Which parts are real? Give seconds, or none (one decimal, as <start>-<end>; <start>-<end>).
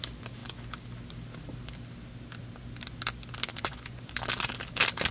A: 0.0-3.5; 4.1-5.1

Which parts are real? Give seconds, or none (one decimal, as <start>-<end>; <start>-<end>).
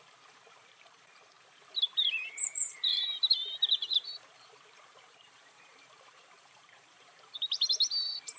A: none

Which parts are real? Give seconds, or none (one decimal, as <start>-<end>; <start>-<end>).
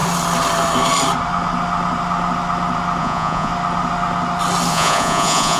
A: 0.0-3.0; 3.5-4.7